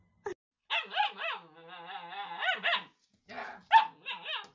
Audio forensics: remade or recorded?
recorded